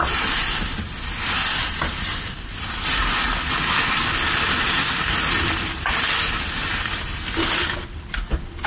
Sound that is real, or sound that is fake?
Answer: real